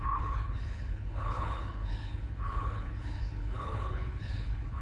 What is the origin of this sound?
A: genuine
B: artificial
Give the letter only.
B